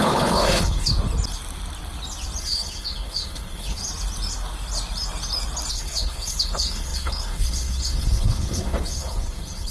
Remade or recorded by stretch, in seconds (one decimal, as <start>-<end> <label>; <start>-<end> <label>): 0.0-0.9 remade; 0.9-2.4 recorded; 2.4-3.8 remade; 3.8-5.7 recorded; 5.7-9.7 remade